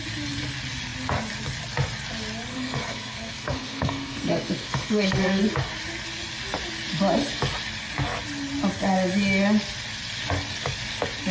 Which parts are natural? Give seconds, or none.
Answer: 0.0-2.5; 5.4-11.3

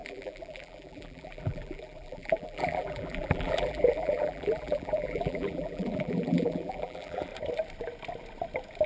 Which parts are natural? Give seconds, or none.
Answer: 7.3-8.9